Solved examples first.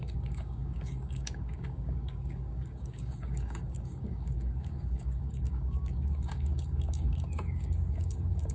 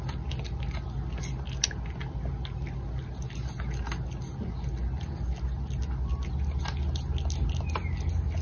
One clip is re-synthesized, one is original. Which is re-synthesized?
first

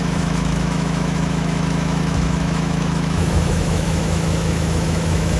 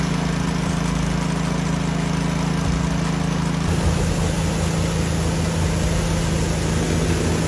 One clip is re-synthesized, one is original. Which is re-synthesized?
first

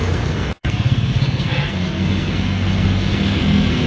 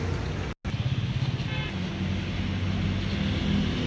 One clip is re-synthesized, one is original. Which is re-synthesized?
first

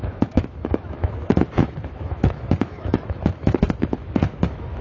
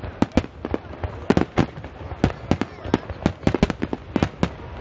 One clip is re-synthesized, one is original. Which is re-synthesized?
first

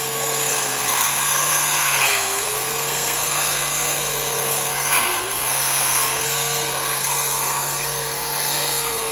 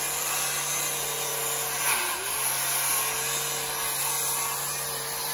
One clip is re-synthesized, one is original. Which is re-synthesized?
first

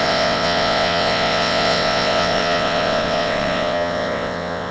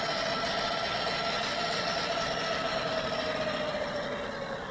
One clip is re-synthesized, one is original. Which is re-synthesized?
first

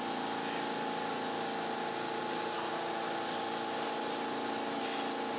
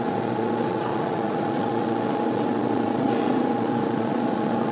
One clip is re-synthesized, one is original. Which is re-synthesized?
second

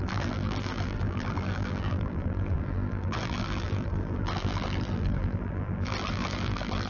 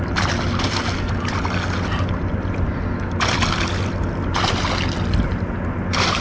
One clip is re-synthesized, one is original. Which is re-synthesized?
first